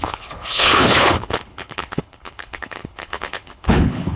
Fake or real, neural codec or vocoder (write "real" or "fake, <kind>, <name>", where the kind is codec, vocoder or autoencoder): fake, codec, HILCodec